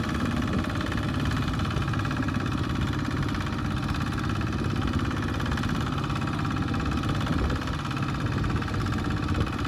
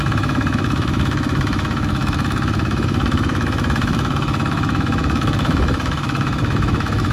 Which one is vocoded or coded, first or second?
second